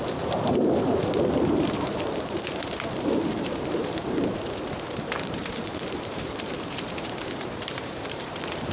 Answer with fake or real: fake